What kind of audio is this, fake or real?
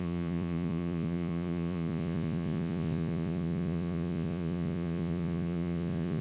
fake